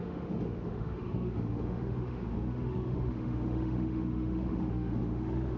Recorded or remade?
remade